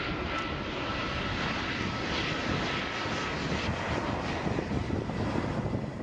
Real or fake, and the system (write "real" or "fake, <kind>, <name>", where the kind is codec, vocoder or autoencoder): real